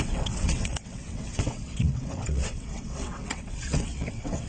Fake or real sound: fake